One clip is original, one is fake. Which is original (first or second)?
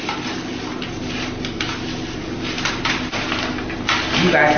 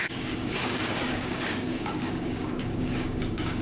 first